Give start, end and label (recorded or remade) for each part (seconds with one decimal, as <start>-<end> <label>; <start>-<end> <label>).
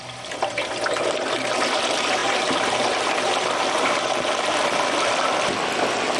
0.0-6.2 recorded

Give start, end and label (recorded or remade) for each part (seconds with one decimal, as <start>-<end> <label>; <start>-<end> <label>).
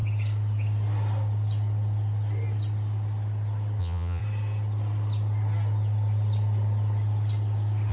0.0-3.8 recorded; 3.8-4.2 remade; 4.2-7.9 recorded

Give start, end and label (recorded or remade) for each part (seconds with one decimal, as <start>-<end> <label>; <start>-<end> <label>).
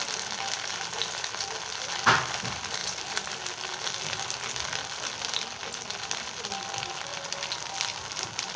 0.0-2.8 recorded; 2.8-3.4 remade; 3.4-8.6 recorded